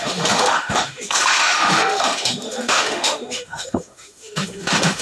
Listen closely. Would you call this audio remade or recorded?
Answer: remade